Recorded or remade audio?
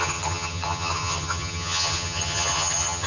remade